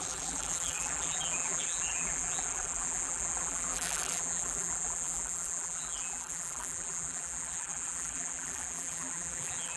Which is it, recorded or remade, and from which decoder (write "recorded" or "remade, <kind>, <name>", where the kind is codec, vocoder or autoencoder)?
remade, vocoder, BigVGAN v2